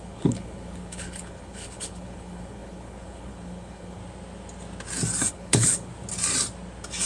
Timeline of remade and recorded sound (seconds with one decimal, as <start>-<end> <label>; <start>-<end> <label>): 0.0-4.0 remade; 4.0-5.3 recorded; 5.3-5.9 remade; 5.9-7.1 recorded